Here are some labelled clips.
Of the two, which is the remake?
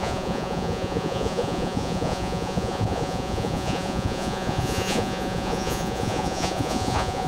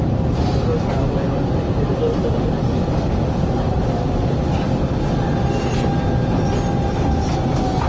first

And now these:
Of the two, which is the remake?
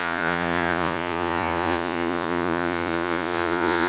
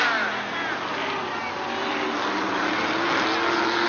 first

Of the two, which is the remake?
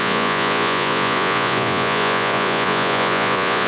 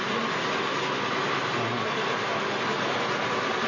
first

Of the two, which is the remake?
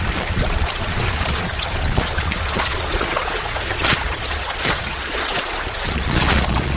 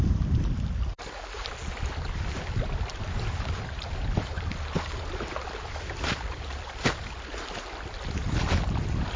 first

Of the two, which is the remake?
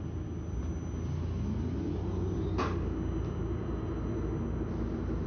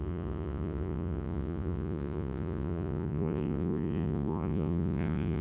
second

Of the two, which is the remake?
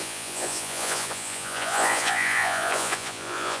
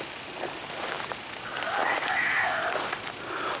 first